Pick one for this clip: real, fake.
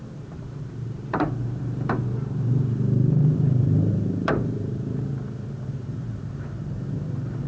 fake